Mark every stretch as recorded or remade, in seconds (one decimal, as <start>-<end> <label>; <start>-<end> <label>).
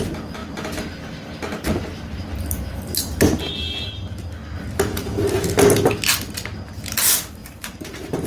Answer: 0.0-4.4 recorded; 4.4-5.1 remade; 5.1-7.4 recorded; 7.4-8.3 remade